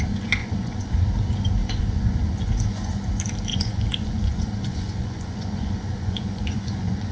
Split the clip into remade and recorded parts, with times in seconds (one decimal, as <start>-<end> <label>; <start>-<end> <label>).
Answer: 0.0-0.4 recorded; 0.4-1.0 remade; 1.0-1.6 recorded; 1.6-3.0 remade; 3.0-3.5 recorded; 3.5-7.1 remade